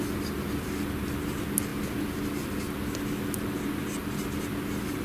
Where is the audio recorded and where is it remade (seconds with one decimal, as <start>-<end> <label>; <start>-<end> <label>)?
0.0-5.0 recorded